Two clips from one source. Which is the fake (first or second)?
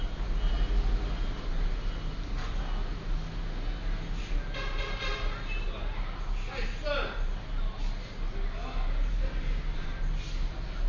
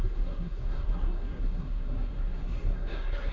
second